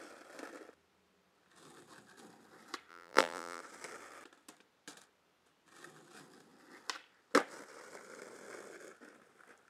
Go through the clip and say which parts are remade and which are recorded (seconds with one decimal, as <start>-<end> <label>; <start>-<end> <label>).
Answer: 0.0-2.9 recorded; 2.9-3.6 remade; 3.6-9.7 recorded